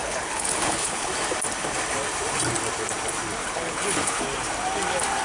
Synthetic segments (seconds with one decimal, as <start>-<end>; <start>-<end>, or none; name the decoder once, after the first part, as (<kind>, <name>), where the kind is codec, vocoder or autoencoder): 0.0-1.1 (codec, HILCodec); 3.4-4.2